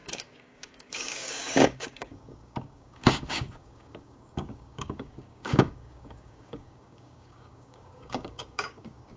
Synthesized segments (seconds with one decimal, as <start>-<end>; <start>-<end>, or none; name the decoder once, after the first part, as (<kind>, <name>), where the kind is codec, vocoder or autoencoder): 0.0-9.2 (codec, DAC)